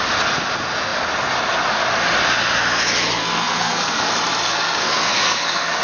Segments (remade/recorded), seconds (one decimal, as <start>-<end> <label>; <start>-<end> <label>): 0.0-3.2 recorded; 3.2-4.1 remade; 4.1-4.5 recorded; 4.5-5.8 remade